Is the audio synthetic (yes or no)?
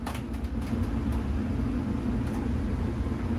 no